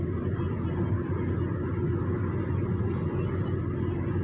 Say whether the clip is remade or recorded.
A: recorded